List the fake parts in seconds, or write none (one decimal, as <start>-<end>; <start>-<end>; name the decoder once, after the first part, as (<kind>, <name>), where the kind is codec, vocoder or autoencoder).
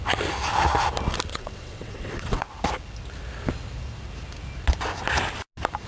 1.3-2.5 (vocoder, WaveNeXt)